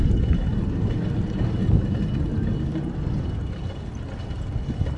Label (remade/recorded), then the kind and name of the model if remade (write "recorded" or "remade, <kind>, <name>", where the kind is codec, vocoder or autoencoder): recorded